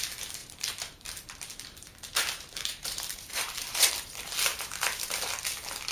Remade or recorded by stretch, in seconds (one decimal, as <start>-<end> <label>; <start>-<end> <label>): 0.0-0.4 recorded; 0.4-3.9 remade; 3.9-4.5 recorded; 4.5-5.3 remade; 5.3-5.9 recorded